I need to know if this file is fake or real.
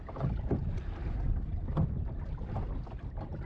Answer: real